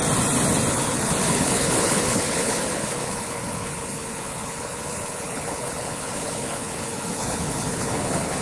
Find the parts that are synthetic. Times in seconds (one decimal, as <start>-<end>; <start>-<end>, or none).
0.7-8.4

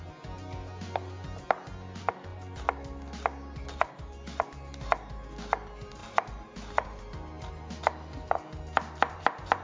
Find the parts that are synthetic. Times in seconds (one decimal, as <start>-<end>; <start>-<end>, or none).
none

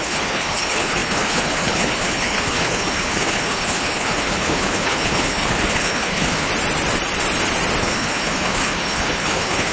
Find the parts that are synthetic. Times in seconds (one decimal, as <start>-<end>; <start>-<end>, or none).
0.0-6.5; 7.8-9.7

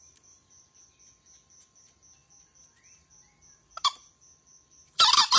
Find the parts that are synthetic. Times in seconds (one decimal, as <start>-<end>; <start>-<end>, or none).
none